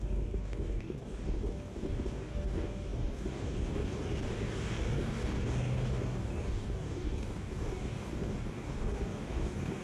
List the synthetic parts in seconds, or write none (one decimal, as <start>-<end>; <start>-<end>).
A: 0.0-9.8